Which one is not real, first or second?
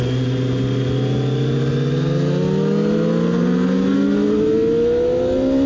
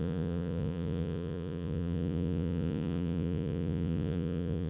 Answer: second